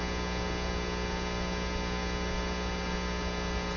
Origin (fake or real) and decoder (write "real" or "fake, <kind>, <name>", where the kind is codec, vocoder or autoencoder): real